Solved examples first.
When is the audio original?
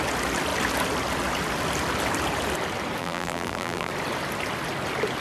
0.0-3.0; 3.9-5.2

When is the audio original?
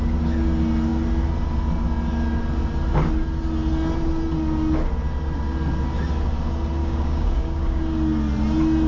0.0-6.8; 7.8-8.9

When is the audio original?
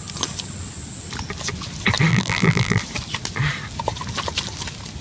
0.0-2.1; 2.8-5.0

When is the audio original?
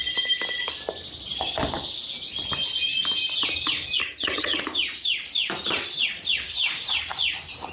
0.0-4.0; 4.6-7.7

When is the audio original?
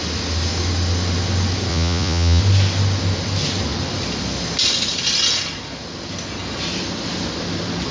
0.0-1.7; 2.4-7.9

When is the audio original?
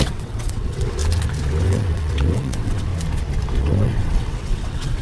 1.0-1.6; 2.9-3.6